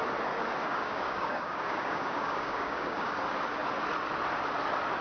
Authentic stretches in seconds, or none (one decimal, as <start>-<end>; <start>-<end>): 0.0-0.6; 3.2-5.0